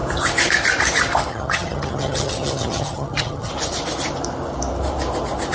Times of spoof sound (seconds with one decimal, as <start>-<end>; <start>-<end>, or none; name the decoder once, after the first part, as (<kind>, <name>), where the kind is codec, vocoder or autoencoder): 1.3-3.5 (vocoder, HiFi-GAN)